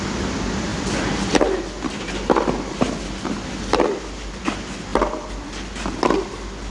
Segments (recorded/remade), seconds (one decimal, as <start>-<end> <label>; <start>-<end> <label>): 0.0-6.7 recorded